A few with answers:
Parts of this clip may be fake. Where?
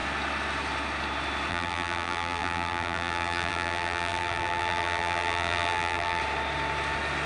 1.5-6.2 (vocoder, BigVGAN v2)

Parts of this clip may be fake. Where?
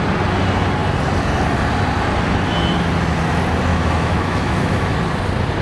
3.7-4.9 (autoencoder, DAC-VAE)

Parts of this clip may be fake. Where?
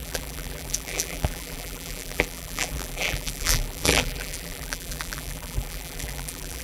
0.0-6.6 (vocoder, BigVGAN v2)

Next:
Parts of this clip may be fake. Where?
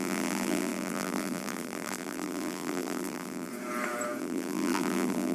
0.0-3.5 (vocoder, BigVGAN v2); 4.2-5.3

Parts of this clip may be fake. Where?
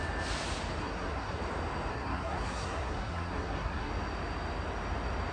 0.8-1.4 (codec, SNAC); 1.9-3.9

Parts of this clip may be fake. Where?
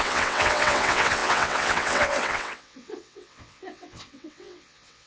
0.0-5.1 (vocoder, WaveNeXt)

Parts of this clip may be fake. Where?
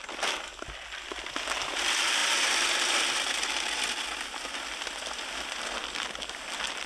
none